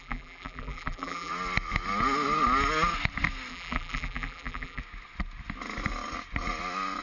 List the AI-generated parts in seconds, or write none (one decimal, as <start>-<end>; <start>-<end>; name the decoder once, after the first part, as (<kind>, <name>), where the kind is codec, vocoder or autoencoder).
0.0-1.3 (vocoder, BigVGAN v2); 3.5-4.8